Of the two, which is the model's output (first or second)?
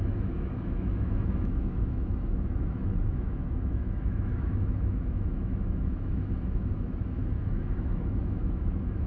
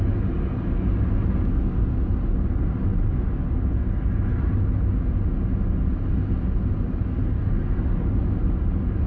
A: first